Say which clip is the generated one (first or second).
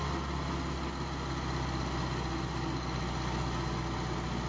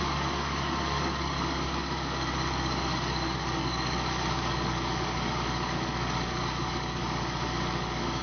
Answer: second